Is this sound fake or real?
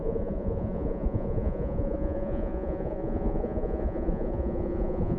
fake